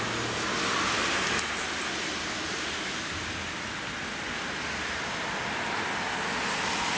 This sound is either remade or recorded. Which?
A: recorded